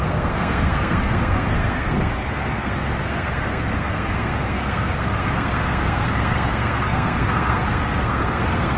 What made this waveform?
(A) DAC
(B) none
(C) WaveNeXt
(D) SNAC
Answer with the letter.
D